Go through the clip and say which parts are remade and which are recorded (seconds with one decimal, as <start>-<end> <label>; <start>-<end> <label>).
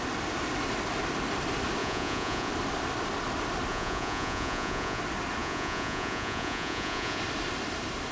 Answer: 0.0-1.8 recorded; 1.8-2.5 remade; 2.5-3.7 recorded; 3.7-5.0 remade; 5.0-5.4 recorded; 5.4-7.2 remade; 7.2-8.1 recorded